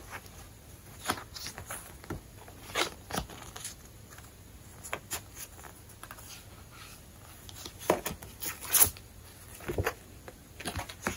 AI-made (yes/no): no